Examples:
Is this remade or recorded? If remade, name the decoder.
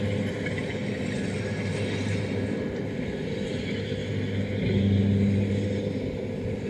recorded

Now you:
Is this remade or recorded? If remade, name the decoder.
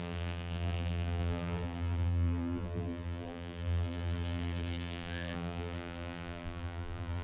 remade, vocoder, BigVGAN v2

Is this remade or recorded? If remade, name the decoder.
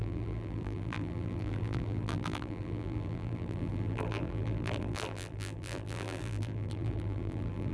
remade, vocoder, BigVGAN v2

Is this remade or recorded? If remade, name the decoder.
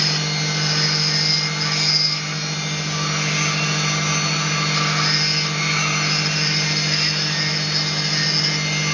recorded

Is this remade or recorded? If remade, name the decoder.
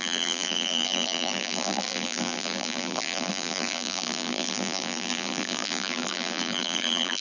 remade, vocoder, BigVGAN v2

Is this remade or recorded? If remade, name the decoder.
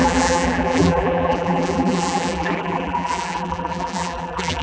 remade, vocoder, BigVGAN v2